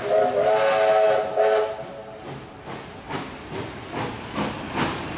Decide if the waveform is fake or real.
real